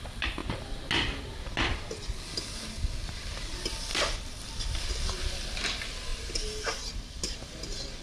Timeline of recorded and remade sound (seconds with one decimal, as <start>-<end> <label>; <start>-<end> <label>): 0.0-3.9 recorded; 3.9-4.9 remade; 4.9-6.1 recorded; 6.1-7.0 remade; 7.0-8.0 recorded